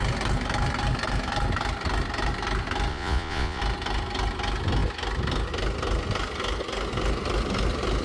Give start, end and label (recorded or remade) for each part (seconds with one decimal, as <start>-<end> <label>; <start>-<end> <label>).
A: 0.0-2.9 recorded; 2.9-3.6 remade; 3.6-8.0 recorded